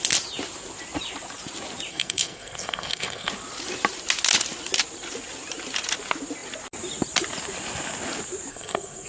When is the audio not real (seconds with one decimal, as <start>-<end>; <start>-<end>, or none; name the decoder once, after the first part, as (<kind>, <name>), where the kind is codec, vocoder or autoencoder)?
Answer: 1.9-3.3 (codec, SNAC); 8.5-9.1

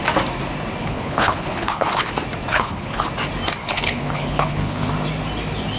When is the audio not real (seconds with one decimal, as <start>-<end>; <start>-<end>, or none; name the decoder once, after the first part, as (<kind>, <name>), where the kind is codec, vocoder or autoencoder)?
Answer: 0.8-2.1 (codec, HILCodec); 2.5-3.1; 3.6-4.9

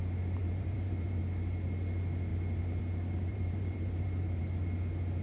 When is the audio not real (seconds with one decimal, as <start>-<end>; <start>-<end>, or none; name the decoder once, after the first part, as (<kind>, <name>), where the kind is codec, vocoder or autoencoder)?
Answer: 0.4-1.2 (vocoder, BigVGAN v2); 3.3-4.4

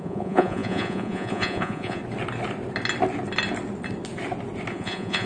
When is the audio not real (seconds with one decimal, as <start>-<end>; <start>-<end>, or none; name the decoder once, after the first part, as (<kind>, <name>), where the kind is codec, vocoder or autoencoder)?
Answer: 0.0-2.0 (vocoder, Vocos); 4.7-5.3